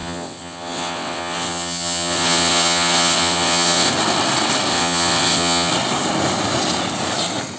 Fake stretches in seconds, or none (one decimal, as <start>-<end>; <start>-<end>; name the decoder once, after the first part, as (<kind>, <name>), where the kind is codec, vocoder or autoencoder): 0.0-3.9 (vocoder, WaveNeXt); 4.7-5.7